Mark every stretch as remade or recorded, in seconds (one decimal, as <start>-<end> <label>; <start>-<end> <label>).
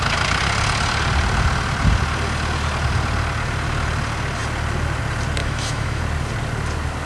0.0-5.4 recorded; 5.4-6.0 remade; 6.0-7.1 recorded